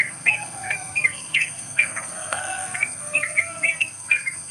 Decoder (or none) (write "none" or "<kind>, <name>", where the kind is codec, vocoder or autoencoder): codec, SNAC